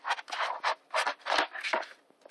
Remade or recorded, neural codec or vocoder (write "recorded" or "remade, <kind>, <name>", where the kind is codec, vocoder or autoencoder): recorded